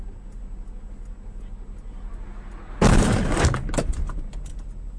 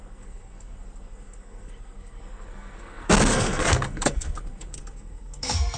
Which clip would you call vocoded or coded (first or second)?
second